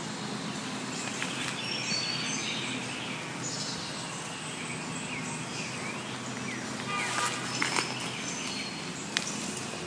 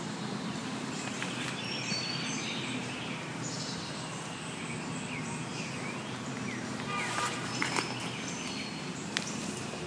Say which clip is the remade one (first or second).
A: second